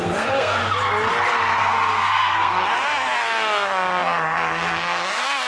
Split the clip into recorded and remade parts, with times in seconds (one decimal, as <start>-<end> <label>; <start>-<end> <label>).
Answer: 0.0-0.6 remade; 0.6-1.6 recorded; 1.6-5.5 remade